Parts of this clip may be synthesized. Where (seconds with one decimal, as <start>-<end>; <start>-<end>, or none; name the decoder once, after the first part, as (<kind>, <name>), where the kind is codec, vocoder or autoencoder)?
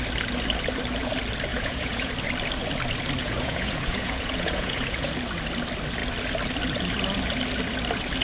1.5-2.1 (vocoder, Vocos); 3.2-5.1